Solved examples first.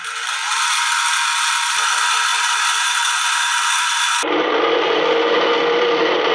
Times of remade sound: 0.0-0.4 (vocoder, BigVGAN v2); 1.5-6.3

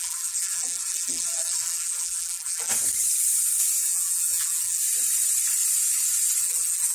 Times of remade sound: 0.0-2.7 (vocoder, BigVGAN v2); 3.8-4.8; 6.4-6.9

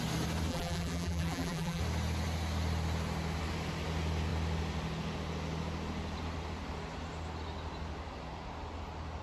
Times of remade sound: 0.5-1.8 (vocoder, BigVGAN v2)

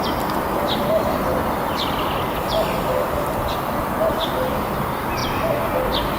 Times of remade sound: none

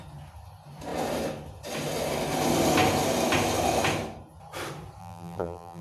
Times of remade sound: 5.0-5.8 (vocoder, BigVGAN v2)

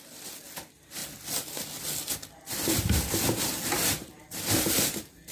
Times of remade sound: none

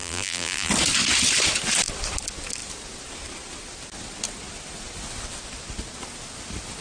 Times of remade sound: 0.0-0.7 (vocoder, BigVGAN v2)